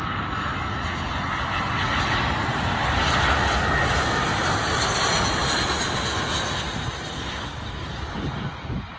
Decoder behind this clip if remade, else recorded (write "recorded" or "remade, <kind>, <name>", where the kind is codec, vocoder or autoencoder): recorded